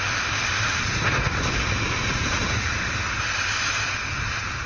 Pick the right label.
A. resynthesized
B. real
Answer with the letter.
B